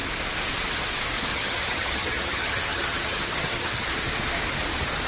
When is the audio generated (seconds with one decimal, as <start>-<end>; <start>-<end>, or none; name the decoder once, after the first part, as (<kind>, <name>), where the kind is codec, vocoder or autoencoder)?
1.3-3.9 (vocoder, HiFi-GAN)